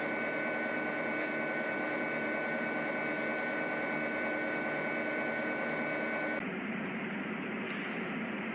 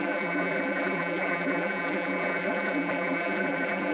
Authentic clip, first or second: first